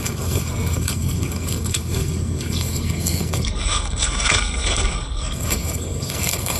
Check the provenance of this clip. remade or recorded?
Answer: remade